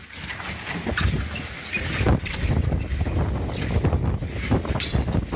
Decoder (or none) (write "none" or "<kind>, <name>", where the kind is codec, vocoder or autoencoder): none